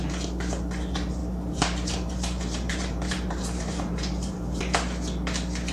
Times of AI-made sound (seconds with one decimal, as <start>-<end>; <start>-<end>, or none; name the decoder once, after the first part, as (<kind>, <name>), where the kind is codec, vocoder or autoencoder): 1.2-4.6 (vocoder, BigVGAN v2)